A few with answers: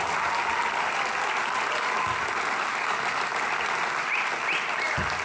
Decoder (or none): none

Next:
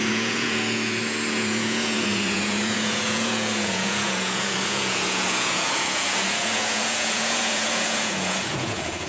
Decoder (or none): vocoder, Vocos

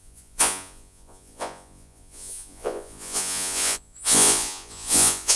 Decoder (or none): vocoder, Vocos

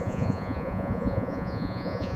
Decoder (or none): vocoder, Vocos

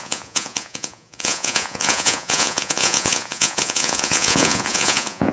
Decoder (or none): vocoder, Vocos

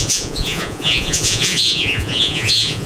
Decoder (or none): vocoder, Vocos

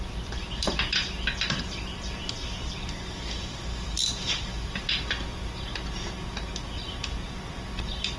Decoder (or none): none